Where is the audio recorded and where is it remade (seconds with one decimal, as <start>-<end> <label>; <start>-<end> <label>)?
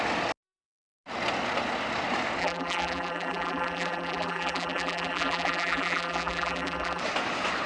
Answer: 0.0-2.4 recorded; 2.4-7.0 remade; 7.0-7.7 recorded